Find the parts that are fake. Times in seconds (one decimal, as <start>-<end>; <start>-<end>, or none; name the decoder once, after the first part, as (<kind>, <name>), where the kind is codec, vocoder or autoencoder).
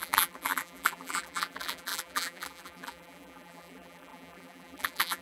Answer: 0.0-5.2 (vocoder, BigVGAN v2)